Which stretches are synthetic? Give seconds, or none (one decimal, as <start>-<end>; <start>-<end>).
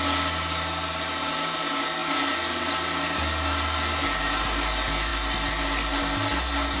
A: none